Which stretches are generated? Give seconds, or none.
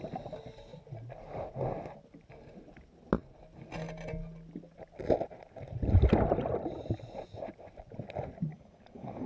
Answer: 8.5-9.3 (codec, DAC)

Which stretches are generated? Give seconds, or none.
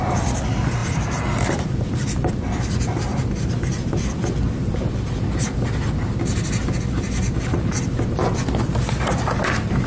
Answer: 0.8-2.3 (vocoder, BigVGAN v2)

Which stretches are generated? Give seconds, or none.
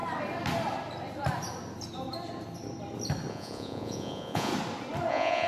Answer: 3.3-4.5 (vocoder, Vocos); 5.1-5.5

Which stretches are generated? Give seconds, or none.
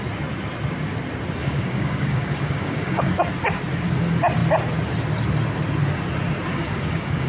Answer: 1.4-3.2 (codec, DAC); 6.5-7.3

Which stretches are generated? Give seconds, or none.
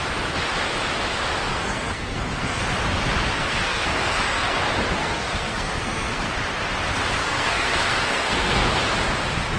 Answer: 1.5-2.6 (codec, SNAC); 3.3-4.6; 5.0-6.3; 7.2-8.8